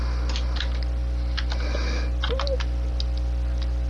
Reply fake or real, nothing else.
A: real